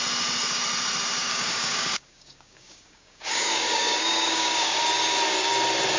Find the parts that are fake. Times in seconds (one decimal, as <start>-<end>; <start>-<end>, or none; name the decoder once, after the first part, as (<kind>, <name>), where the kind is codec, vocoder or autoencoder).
1.2-4.8 (codec, DAC)